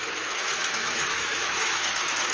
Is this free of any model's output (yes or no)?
no